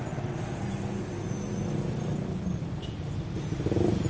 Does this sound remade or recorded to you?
recorded